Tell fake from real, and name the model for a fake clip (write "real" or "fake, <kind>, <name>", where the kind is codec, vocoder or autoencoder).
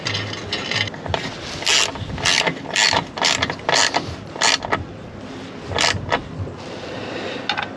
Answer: real